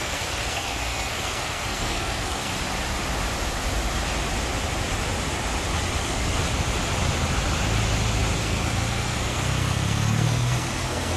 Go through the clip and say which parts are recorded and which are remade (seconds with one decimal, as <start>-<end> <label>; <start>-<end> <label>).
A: 0.0-2.5 remade; 2.5-6.0 recorded; 6.0-6.4 remade; 6.4-8.4 recorded; 8.4-11.2 remade